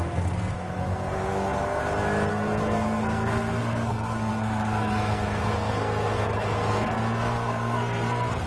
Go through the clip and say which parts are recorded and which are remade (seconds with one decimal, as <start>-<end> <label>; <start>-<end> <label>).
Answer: 0.0-1.8 remade; 1.8-2.3 recorded; 2.3-8.5 remade